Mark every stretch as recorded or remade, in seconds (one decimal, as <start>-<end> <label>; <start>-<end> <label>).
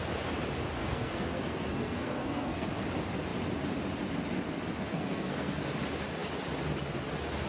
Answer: 0.0-0.8 recorded; 0.8-2.7 remade; 2.7-4.9 recorded; 4.9-5.6 remade; 5.6-7.5 recorded